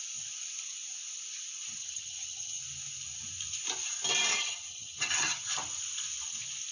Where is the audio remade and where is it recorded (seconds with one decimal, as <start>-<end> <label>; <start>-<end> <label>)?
0.0-1.8 recorded; 1.8-2.6 remade; 2.6-4.3 recorded; 4.3-5.5 remade; 5.5-6.7 recorded